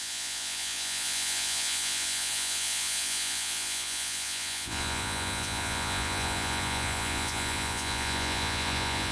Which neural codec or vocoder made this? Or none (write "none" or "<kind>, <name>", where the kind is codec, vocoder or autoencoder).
vocoder, Vocos